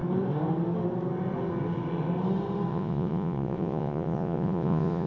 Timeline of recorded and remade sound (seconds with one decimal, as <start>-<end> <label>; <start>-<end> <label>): 0.0-2.7 recorded; 2.7-5.1 remade